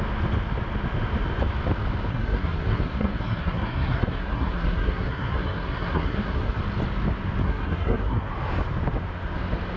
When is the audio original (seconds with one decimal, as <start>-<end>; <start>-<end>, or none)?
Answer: 0.0-2.1; 6.6-7.4; 8.3-9.8